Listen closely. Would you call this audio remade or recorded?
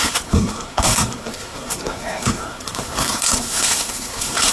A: remade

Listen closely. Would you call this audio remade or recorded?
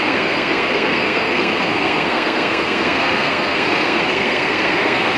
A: remade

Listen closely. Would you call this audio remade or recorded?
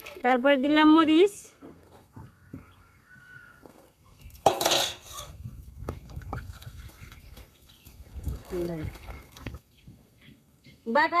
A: remade